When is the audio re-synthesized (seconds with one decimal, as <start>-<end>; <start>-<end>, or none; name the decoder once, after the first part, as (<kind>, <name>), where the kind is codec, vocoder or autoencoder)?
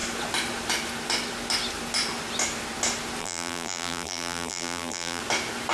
3.2-5.2 (vocoder, BigVGAN v2)